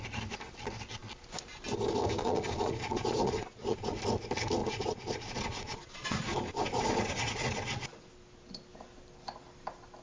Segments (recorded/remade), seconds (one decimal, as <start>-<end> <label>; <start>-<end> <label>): 0.0-2.2 recorded; 2.2-4.0 remade; 4.0-4.6 recorded; 4.6-8.1 remade; 8.1-10.0 recorded